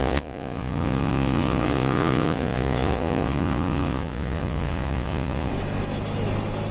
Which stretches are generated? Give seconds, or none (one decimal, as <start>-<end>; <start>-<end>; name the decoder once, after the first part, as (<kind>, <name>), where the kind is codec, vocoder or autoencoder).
0.0-5.5 (vocoder, Vocos)